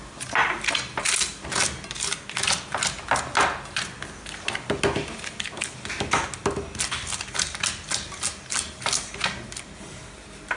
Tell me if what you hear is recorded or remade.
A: recorded